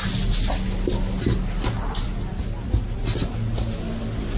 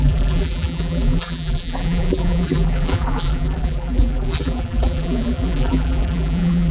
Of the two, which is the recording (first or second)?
first